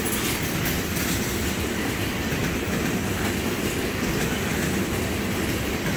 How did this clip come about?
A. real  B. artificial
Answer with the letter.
A